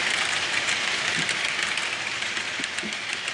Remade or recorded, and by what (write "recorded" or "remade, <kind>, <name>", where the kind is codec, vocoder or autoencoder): recorded